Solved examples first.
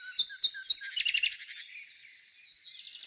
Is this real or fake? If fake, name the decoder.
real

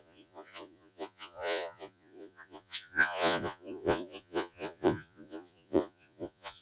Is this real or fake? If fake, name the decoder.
fake, vocoder, Vocos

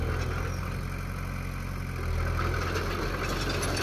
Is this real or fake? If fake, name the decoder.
real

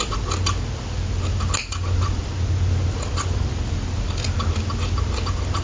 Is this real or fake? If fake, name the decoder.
real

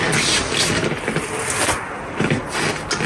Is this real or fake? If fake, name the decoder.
real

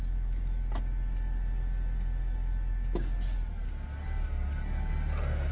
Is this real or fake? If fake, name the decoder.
real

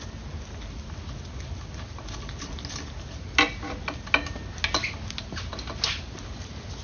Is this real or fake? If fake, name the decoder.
real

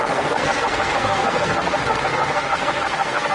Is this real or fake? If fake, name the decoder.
fake, codec, SNAC